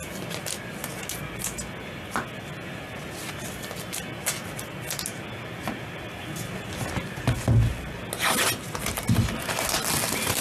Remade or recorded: recorded